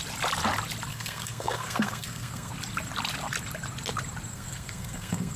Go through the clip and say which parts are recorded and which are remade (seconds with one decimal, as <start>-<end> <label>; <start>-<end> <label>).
0.0-0.9 recorded; 0.9-2.5 remade; 2.5-4.3 recorded; 4.3-5.4 remade